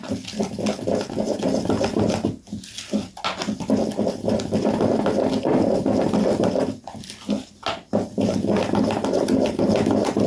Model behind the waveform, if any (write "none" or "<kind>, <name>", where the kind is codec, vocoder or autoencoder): none